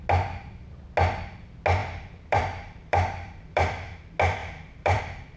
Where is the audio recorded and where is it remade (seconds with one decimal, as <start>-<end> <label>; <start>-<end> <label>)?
0.0-1.8 recorded; 1.8-4.0 remade; 4.0-4.4 recorded; 4.4-5.0 remade; 5.0-5.4 recorded